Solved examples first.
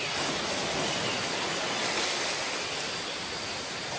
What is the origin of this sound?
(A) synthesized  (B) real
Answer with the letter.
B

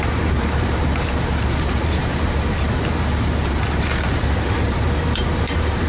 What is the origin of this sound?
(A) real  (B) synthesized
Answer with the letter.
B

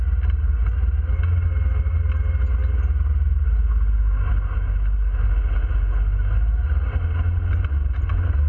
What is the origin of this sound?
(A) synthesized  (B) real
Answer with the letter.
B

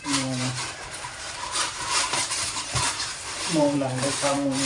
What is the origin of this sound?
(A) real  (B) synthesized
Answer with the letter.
B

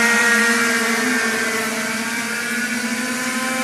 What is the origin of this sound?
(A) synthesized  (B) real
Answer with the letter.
A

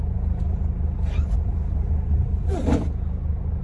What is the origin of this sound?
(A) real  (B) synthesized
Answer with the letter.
B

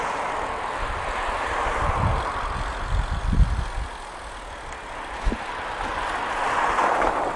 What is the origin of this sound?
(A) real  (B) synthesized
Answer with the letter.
A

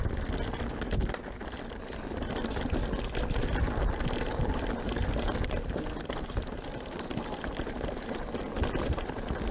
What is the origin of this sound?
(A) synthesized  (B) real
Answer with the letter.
B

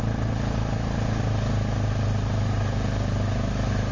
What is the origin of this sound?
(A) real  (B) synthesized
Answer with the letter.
A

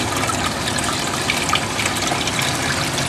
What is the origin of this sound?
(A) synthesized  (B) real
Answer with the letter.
B